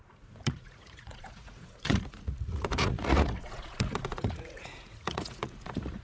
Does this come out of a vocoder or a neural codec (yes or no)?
yes